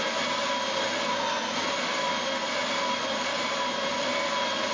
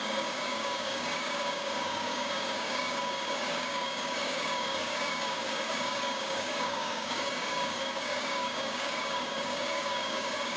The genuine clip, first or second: first